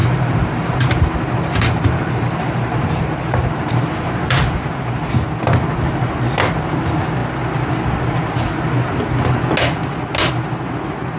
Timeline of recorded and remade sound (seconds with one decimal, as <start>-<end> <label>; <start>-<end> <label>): 0.0-5.1 remade; 5.1-11.2 recorded